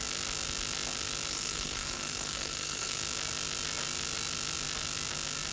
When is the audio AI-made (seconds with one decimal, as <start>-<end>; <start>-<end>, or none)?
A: 1.3-3.0